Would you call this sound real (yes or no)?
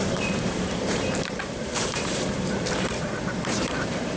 no